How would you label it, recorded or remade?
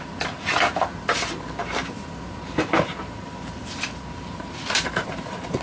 remade